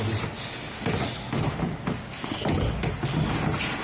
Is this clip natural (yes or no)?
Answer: yes